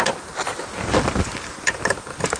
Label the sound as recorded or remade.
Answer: recorded